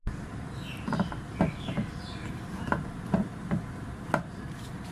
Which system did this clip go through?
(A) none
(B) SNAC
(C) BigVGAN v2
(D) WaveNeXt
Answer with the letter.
A